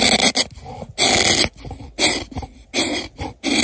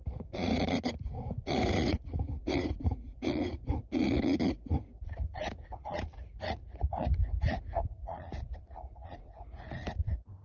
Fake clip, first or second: second